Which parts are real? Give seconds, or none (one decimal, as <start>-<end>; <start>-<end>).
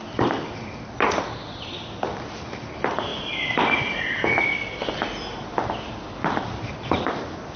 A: 0.0-7.6